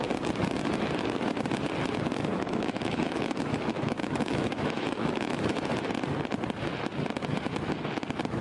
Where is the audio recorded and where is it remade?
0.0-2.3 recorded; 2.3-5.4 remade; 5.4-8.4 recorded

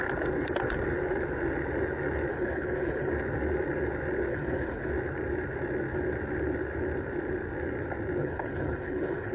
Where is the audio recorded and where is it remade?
0.0-2.3 recorded; 2.3-3.1 remade; 3.1-4.3 recorded; 4.3-4.9 remade; 4.9-8.2 recorded; 8.2-9.3 remade

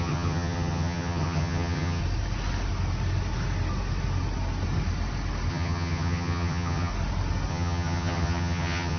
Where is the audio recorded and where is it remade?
0.0-2.0 remade; 2.0-5.5 recorded; 5.5-6.9 remade; 6.9-7.5 recorded; 7.5-9.0 remade

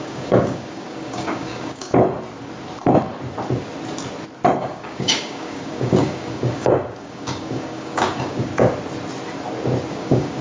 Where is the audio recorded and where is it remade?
0.0-1.9 remade; 1.9-4.6 recorded; 4.6-8.5 remade; 8.5-9.9 recorded; 9.9-10.4 remade

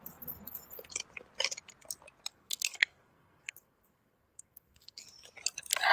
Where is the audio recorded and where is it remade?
0.0-2.3 recorded; 2.3-5.0 remade; 5.0-5.9 recorded

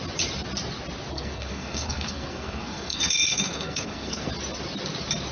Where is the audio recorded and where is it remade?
0.0-1.1 recorded; 1.1-4.3 remade; 4.3-5.3 recorded